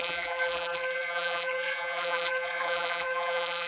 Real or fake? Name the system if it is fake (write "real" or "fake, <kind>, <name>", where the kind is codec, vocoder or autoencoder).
fake, vocoder, BigVGAN v2